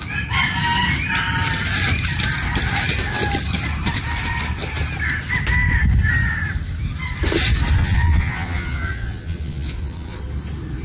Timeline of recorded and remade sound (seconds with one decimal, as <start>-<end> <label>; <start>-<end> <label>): 0.0-7.8 recorded; 7.8-10.2 remade; 10.2-10.8 recorded